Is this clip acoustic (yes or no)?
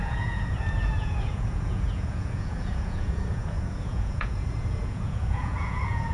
no